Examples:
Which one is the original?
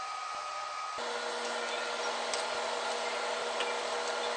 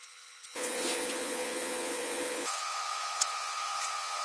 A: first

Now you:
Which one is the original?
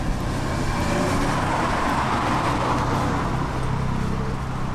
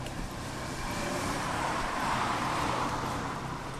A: first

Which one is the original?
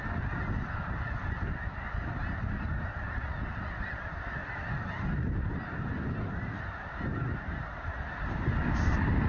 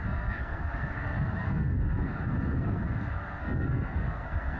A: first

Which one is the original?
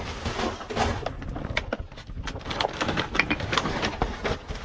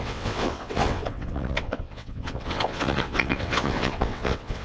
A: first